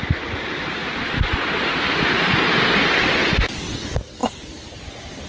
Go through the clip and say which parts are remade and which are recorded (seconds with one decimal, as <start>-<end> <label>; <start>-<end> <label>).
0.0-5.3 recorded